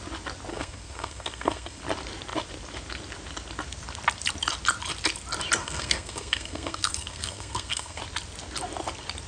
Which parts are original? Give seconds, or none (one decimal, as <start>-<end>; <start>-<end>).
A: 0.0-0.5; 1.8-5.6; 8.0-9.3